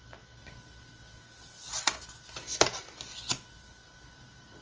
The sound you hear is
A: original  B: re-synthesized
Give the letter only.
A